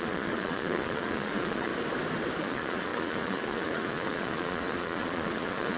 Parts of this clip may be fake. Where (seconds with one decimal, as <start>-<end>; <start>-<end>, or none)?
0.0-1.7; 2.4-5.8